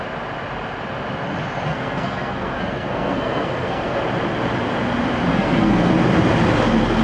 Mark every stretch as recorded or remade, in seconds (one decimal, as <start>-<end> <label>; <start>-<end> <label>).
0.0-1.7 recorded; 1.7-4.0 remade; 4.0-5.3 recorded; 5.3-5.9 remade; 5.9-7.0 recorded